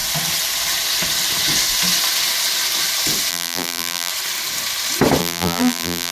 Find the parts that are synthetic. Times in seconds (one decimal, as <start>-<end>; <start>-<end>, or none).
3.3-4.1; 5.2-6.1